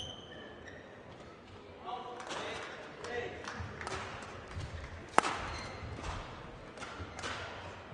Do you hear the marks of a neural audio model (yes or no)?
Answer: no